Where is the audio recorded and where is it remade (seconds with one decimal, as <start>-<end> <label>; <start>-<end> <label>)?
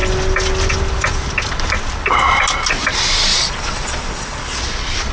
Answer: 0.0-3.3 recorded; 3.3-4.6 remade; 4.6-5.1 recorded